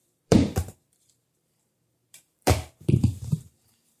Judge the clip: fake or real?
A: fake